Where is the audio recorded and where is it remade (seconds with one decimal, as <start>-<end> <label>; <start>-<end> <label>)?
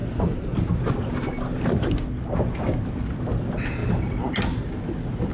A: 0.0-5.3 recorded